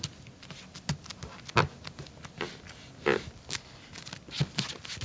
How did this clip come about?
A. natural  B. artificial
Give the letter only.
A